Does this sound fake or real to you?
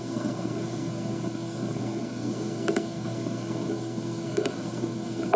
fake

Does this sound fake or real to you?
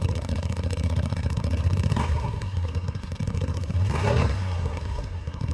fake